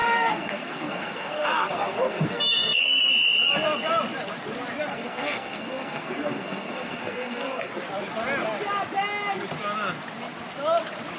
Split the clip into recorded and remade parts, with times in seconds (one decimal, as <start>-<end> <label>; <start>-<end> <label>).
0.0-3.1 remade; 3.1-4.9 recorded; 4.9-7.7 remade; 7.7-11.2 recorded